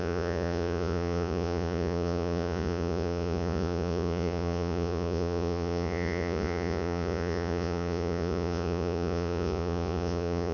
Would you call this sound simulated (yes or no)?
yes